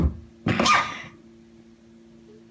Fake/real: real